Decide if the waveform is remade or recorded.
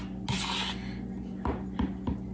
recorded